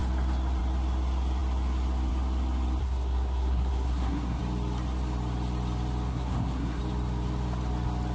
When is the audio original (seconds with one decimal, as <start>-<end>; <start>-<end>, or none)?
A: 0.0-2.8; 4.4-6.1; 6.8-8.1